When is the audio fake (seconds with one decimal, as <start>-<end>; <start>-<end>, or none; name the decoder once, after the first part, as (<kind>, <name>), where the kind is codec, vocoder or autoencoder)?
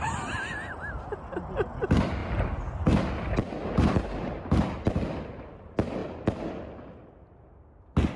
none